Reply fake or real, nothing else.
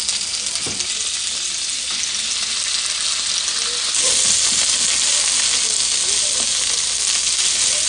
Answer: real